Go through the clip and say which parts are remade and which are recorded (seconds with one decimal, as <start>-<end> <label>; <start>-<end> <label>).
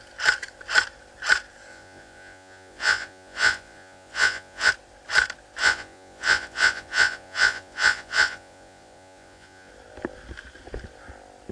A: 0.0-1.7 recorded; 1.7-4.7 remade; 4.7-5.6 recorded; 5.6-9.7 remade; 9.7-11.5 recorded